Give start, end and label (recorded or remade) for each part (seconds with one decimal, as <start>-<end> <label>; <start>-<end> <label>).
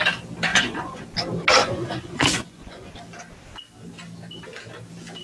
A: 0.0-0.5 recorded; 0.5-1.0 remade; 1.0-1.6 recorded; 1.6-2.9 remade; 2.9-5.2 recorded